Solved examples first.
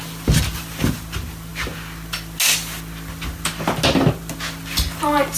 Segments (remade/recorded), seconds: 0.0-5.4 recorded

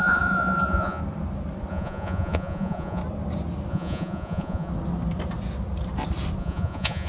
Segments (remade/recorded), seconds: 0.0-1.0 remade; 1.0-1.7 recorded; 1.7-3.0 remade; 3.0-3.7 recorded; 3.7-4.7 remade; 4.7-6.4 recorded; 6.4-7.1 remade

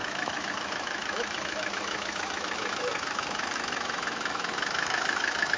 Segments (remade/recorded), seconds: 0.0-5.6 remade